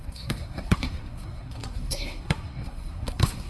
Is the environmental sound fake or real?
fake